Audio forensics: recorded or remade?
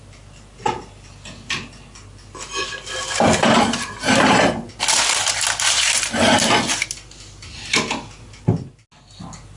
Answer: recorded